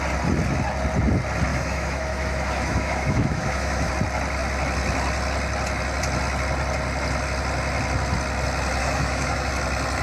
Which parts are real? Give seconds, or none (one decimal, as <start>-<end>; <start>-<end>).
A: 0.0-1.5; 3.9-8.8; 9.5-10.0